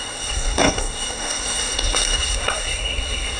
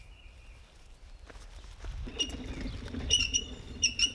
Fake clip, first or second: first